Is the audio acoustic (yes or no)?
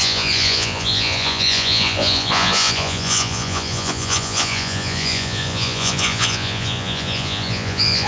no